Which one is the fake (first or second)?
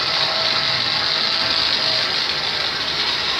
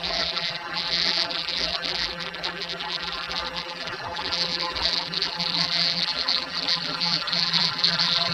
second